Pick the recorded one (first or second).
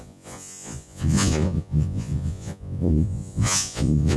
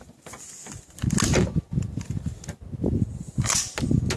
second